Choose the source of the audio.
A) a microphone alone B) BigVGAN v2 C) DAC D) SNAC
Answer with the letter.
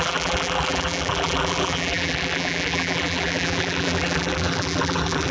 B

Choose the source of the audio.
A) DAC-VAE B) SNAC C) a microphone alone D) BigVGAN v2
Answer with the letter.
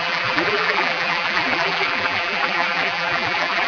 D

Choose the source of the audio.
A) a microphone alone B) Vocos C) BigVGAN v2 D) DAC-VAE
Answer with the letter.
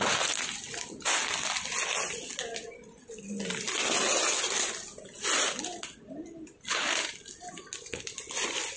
A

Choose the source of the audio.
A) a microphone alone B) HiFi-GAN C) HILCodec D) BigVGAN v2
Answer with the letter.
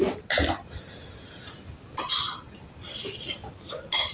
A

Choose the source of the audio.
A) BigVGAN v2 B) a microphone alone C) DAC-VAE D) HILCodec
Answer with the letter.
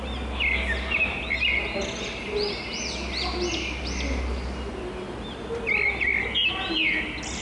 B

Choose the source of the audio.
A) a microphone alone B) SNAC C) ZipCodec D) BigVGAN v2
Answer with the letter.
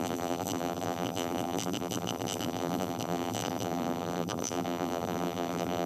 D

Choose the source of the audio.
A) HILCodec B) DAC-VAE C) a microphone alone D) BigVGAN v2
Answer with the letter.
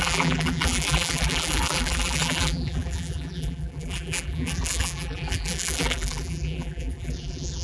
D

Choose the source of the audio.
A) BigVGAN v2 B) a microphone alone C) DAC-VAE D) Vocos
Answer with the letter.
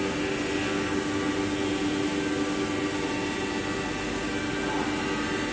B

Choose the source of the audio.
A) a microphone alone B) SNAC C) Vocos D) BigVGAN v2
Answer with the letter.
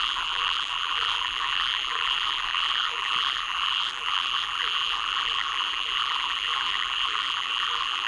D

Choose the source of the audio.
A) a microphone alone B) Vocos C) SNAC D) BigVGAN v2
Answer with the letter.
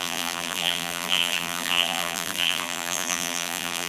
D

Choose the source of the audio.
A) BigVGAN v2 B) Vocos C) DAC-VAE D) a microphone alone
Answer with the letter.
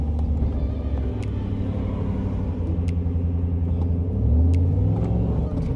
D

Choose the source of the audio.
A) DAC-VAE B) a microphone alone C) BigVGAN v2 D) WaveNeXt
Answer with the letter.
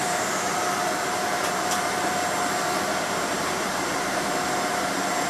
C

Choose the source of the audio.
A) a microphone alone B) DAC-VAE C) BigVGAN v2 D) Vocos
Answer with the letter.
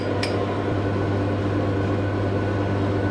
A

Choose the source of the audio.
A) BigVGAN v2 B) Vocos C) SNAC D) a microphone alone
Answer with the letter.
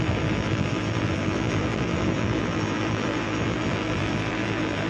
A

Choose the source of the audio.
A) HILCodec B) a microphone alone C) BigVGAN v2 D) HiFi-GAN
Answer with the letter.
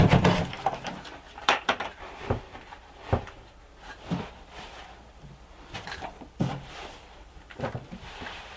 C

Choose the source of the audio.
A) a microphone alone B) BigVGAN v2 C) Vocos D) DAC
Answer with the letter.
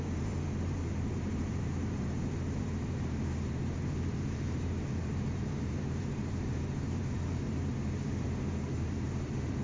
B